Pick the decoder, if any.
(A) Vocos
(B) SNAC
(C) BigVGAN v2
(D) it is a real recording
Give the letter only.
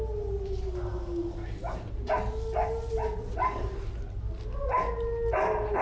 D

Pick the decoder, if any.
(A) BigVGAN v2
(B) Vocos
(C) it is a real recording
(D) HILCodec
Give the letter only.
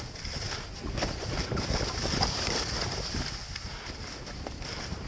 C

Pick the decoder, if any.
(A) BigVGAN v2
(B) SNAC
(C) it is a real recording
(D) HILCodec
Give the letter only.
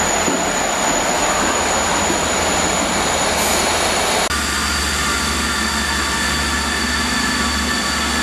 C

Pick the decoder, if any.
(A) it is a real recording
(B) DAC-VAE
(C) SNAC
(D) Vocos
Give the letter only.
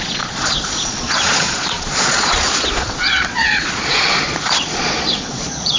D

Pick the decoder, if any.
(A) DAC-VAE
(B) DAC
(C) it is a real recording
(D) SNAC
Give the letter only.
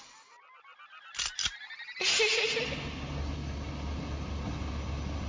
C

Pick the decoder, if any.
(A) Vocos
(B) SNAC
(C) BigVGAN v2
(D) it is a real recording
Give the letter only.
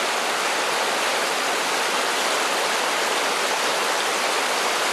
D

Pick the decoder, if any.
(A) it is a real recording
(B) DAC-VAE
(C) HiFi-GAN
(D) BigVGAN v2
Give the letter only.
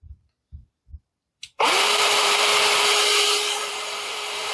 D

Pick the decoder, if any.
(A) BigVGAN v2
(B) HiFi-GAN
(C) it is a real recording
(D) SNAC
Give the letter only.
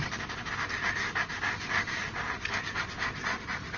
C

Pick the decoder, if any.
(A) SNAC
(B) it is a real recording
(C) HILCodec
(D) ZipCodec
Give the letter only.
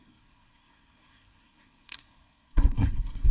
A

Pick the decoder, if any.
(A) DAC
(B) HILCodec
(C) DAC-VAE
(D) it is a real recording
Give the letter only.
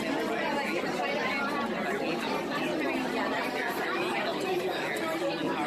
D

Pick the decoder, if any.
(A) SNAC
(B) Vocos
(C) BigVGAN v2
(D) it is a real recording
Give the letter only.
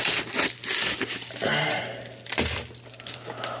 D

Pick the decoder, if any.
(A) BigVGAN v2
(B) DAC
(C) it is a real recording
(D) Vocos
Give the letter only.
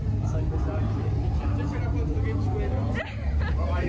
C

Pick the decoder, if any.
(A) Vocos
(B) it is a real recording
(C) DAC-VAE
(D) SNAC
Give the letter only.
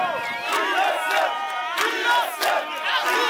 B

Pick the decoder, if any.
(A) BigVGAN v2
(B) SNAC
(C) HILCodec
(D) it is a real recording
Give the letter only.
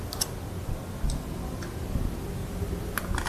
D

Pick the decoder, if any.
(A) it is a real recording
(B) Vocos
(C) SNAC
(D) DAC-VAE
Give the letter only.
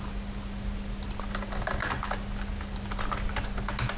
A